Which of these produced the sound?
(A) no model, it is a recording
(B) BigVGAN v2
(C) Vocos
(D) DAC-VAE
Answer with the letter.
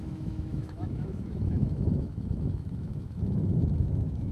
D